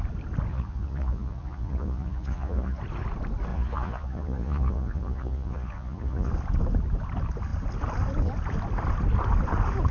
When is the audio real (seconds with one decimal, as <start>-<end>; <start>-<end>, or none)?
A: 0.0-0.5; 2.8-3.5; 6.3-9.9